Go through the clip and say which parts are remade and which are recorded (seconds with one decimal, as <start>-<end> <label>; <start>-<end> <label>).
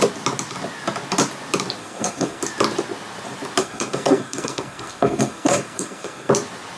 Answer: 0.0-1.8 recorded; 1.8-2.4 remade; 2.4-3.6 recorded; 3.6-6.3 remade; 6.3-6.8 recorded